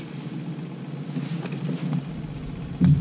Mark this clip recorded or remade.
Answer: recorded